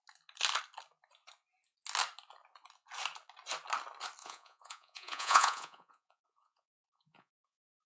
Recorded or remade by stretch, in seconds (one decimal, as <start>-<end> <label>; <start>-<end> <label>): 0.0-4.2 recorded; 4.2-7.9 remade